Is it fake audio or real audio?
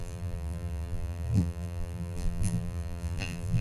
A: fake